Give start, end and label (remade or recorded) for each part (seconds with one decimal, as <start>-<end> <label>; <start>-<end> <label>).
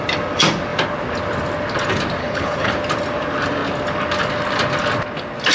0.0-2.2 recorded; 2.2-2.7 remade; 2.7-5.5 recorded